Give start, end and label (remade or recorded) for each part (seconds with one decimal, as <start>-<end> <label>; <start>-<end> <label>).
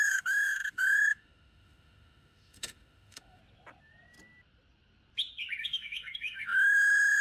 0.0-3.4 remade; 3.4-5.6 recorded; 5.6-7.2 remade